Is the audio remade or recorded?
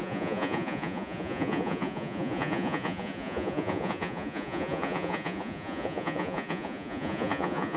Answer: remade